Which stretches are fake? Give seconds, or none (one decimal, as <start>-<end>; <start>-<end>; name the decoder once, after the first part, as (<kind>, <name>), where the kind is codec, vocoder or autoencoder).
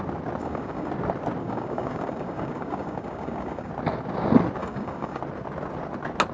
0.4-0.9 (codec, DAC); 1.4-3.7; 4.6-5.2